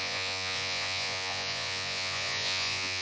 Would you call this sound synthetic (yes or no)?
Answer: yes